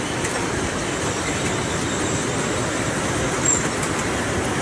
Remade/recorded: recorded